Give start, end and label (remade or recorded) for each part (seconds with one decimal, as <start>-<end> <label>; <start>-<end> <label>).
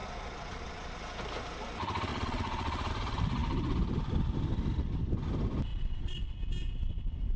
0.0-1.0 remade; 1.0-2.1 recorded; 2.1-2.9 remade; 2.9-5.7 recorded; 5.7-6.2 remade; 6.2-7.4 recorded